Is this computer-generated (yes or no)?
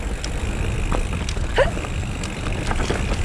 no